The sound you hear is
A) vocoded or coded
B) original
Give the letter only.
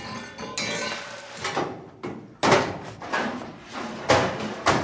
B